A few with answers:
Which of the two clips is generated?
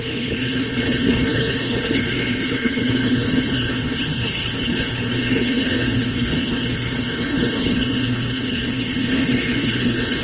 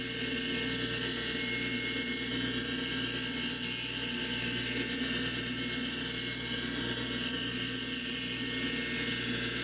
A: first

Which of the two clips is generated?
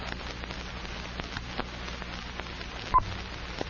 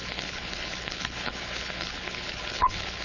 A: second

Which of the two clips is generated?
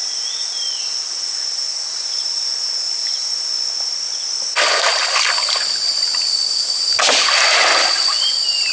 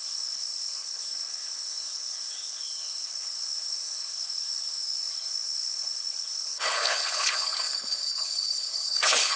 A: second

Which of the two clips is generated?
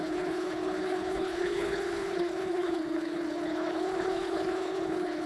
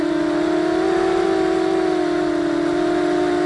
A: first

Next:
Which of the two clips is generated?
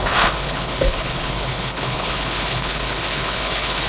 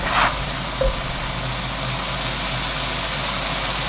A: first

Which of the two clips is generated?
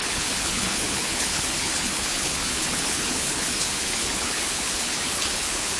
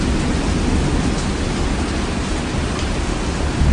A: first